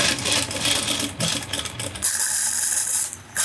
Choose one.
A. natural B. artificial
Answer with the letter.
A